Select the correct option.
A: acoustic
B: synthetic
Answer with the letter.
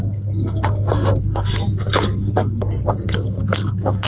B